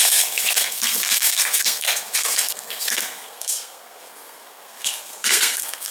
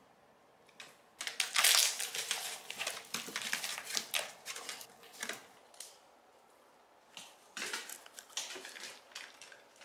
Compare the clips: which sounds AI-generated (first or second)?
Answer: first